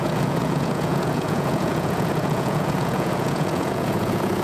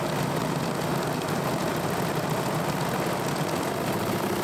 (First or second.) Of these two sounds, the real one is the second